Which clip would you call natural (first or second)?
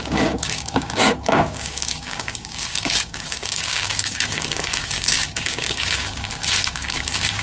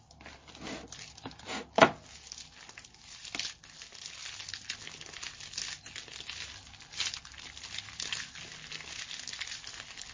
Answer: second